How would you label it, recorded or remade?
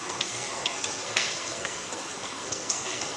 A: remade